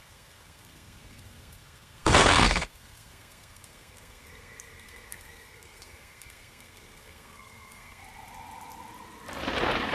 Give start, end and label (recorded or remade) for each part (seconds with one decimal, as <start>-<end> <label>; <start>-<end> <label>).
0.0-8.0 remade; 8.0-9.9 recorded